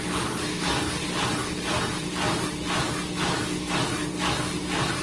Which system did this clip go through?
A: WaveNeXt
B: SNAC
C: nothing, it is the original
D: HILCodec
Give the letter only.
C